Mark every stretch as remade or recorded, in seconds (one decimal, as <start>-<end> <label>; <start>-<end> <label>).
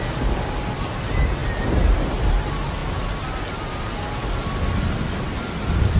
0.0-6.0 recorded